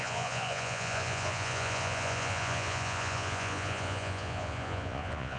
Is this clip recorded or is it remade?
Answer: remade